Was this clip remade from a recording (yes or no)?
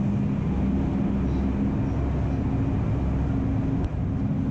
no